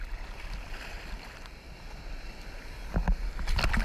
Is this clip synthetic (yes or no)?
no